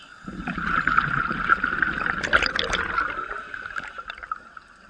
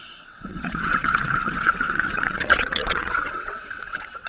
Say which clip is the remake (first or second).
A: second